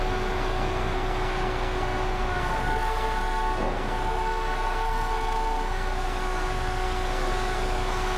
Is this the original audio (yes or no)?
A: no